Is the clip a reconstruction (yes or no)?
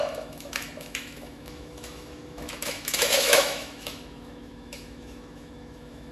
yes